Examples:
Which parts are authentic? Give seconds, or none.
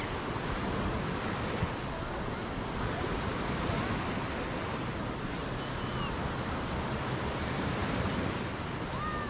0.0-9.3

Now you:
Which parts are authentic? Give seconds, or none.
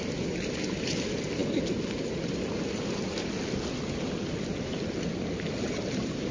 0.0-6.3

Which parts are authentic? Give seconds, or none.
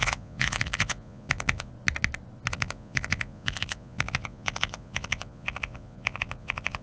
1.7-2.5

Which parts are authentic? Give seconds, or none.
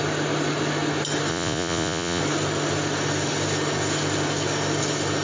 0.0-1.3; 2.2-5.2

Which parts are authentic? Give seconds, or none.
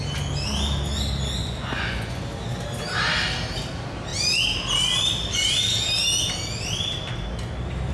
0.0-1.4; 2.2-7.9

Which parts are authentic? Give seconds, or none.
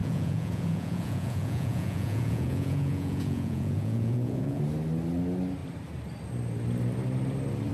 4.6-7.7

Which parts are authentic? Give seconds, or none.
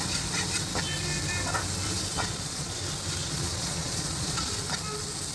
0.0-2.1; 2.7-3.2; 4.7-5.3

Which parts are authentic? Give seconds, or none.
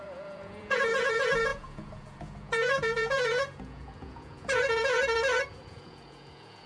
5.0-5.5